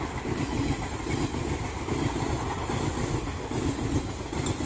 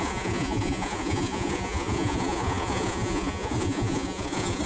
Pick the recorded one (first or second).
first